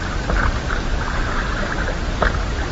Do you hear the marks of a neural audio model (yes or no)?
no